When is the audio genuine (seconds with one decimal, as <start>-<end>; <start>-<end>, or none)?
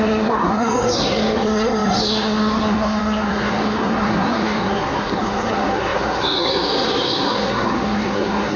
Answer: none